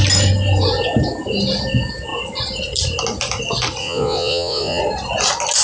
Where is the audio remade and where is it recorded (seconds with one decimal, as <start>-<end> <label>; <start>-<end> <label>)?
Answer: 0.0-3.8 recorded; 3.8-4.8 remade; 4.8-5.6 recorded